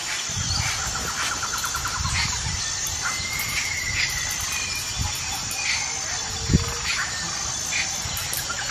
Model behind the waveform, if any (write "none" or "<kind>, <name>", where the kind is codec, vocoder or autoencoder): none